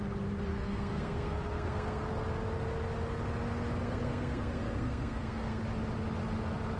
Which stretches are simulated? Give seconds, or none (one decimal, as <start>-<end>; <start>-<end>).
0.5-2.1; 3.8-5.6